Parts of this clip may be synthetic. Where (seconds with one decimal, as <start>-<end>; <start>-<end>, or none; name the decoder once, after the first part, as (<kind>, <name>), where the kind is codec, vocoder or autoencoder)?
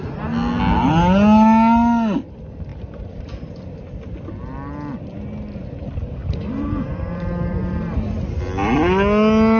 2.7-3.8 (vocoder, BigVGAN v2); 6.2-8.4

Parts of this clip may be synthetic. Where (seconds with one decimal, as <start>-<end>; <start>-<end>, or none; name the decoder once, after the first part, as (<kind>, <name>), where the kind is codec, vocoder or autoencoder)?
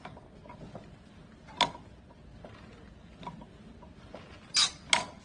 none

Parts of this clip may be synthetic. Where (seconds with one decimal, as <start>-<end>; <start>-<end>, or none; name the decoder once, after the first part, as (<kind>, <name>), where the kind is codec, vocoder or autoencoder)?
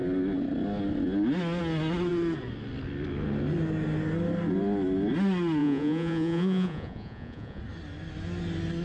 5.6-7.6 (vocoder, Vocos)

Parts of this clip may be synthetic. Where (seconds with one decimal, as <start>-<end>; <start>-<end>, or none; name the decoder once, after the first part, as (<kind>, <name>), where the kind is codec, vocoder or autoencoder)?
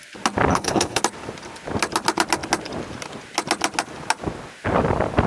0.5-1.0 (codec, HILCodec)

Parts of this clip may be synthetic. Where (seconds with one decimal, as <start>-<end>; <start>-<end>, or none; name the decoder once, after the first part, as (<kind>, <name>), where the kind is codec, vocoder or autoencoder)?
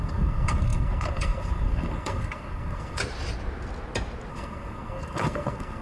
0.0-3.0 (codec, SNAC); 4.3-5.8